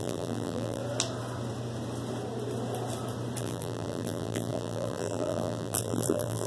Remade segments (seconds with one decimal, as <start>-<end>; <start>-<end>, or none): 0.0-0.8; 3.4-6.5